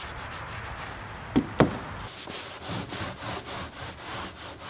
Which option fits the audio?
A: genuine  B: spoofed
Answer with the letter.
A